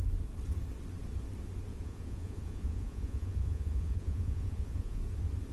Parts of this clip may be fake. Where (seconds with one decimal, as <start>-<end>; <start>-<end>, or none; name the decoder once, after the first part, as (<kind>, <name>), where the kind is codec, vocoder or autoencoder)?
1.7-5.0 (vocoder, Vocos)